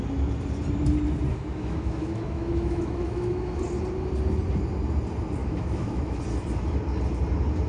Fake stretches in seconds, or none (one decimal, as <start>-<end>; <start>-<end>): 1.3-3.6; 5.4-6.2